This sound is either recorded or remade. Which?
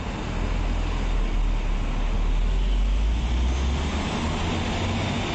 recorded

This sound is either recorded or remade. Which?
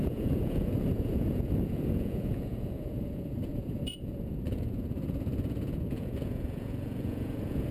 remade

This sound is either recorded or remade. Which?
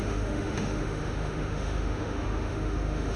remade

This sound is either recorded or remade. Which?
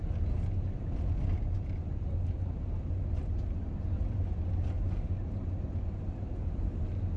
recorded